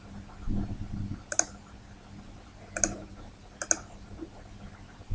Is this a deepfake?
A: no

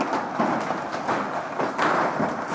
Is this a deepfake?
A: no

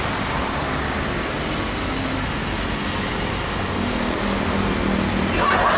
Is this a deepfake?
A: no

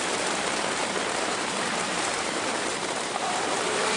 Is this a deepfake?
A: yes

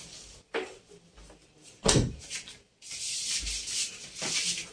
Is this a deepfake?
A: no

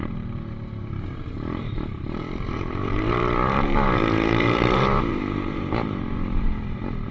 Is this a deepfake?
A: yes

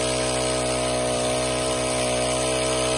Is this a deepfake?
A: no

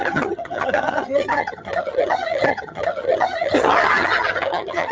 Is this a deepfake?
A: yes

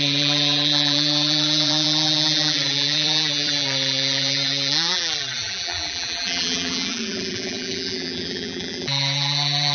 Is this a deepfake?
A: yes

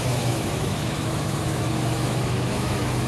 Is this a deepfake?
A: yes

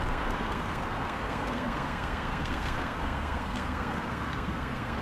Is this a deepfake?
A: yes